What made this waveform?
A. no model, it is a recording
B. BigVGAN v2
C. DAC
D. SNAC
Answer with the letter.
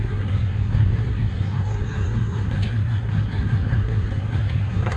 D